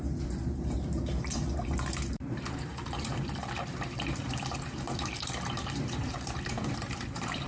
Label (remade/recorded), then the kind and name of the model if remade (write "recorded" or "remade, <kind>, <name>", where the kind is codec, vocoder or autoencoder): remade, vocoder, BigVGAN v2